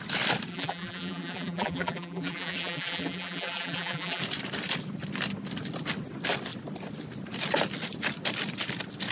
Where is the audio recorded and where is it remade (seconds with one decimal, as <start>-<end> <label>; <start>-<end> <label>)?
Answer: 0.0-0.5 recorded; 0.5-4.2 remade; 4.2-9.1 recorded